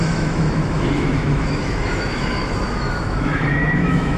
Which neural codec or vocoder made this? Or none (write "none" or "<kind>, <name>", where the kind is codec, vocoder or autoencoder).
autoencoder, DAC-VAE